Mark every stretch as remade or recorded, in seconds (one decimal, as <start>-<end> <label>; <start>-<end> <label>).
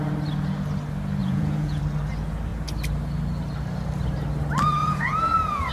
0.0-1.2 recorded; 1.2-1.8 remade; 1.8-4.8 recorded; 4.8-5.7 remade